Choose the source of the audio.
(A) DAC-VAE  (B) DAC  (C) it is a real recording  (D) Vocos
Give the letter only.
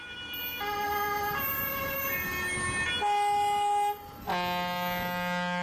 C